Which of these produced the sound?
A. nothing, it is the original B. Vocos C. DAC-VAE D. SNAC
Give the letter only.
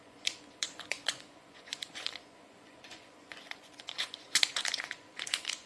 B